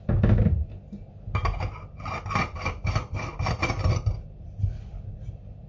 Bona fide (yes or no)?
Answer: yes